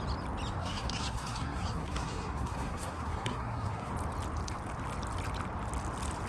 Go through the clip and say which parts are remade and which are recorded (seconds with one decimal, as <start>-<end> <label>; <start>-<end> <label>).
0.0-0.6 recorded; 0.6-3.9 remade; 3.9-6.3 recorded